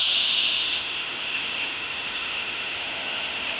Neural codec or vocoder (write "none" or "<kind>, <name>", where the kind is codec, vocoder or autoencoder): autoencoder, DAC-VAE